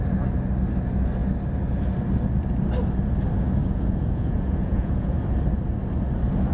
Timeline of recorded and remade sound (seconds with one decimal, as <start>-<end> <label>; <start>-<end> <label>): 0.0-3.6 recorded; 3.6-5.2 remade; 5.2-6.5 recorded